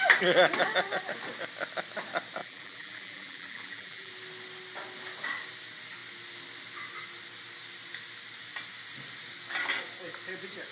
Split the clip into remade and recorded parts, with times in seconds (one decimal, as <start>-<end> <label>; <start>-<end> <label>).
0.0-2.4 recorded; 2.4-4.1 remade; 4.1-10.7 recorded